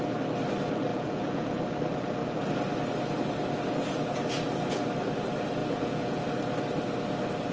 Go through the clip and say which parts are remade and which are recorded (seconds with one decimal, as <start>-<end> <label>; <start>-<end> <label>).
0.0-0.9 recorded; 0.9-1.6 remade; 1.6-5.6 recorded; 5.6-6.2 remade; 6.2-7.5 recorded